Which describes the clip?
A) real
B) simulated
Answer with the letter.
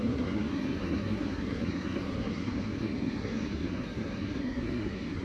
B